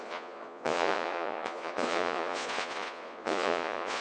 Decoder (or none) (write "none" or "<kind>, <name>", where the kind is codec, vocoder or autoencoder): vocoder, Vocos